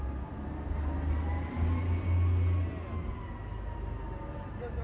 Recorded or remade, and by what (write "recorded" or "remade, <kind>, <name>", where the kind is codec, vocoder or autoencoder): recorded